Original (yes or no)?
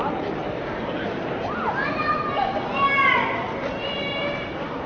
yes